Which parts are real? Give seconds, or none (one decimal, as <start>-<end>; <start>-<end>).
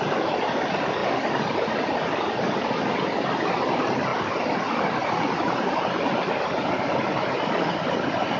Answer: 0.0-8.4